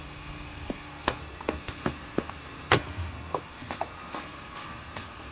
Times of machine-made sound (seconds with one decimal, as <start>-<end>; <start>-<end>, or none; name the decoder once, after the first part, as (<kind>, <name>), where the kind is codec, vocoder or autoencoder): 0.0-5.3 (codec, SNAC)